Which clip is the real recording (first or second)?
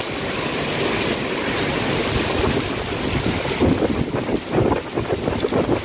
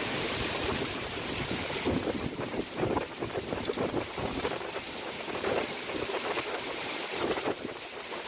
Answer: first